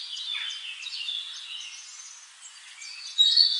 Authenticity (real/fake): fake